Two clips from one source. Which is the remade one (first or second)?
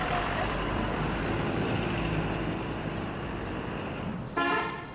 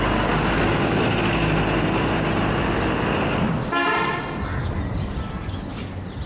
first